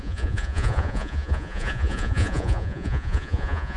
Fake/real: fake